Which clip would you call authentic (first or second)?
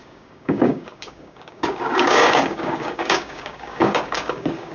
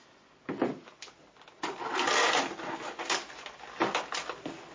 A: second